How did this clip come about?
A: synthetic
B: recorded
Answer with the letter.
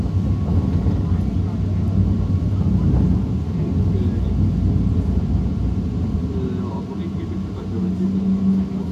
B